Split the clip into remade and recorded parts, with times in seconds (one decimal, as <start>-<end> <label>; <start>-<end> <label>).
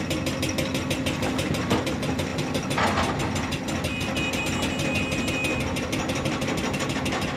0.0-7.4 recorded